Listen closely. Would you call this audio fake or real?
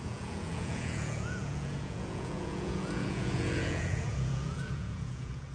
fake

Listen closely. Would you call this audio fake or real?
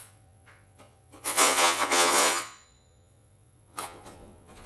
fake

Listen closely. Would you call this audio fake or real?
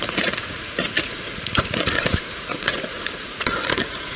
fake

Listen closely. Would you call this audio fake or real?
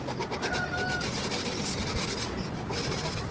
real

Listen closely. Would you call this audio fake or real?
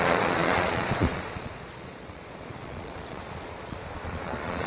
fake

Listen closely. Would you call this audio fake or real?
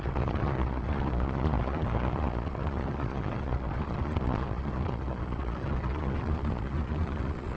fake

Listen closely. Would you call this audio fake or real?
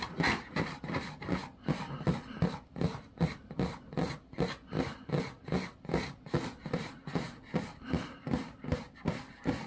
real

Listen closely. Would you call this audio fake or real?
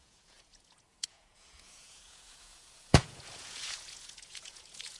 fake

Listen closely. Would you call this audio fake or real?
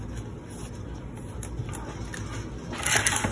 real